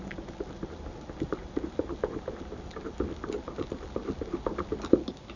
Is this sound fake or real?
real